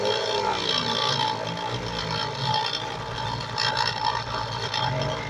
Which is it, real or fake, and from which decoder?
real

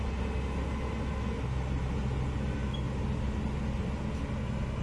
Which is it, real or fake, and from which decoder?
real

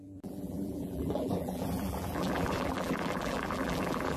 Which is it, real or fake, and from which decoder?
fake, vocoder, BigVGAN v2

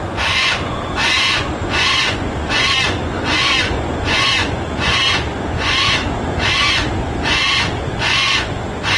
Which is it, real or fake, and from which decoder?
fake, vocoder, Vocos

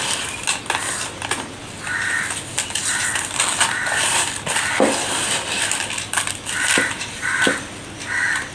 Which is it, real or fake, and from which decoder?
real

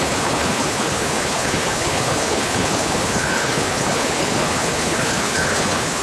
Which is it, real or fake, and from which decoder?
fake, codec, HILCodec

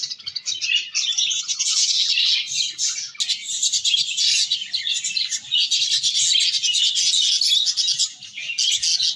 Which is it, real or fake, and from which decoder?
real